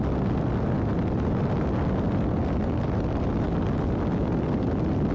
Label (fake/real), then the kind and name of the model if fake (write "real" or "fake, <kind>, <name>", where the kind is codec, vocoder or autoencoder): real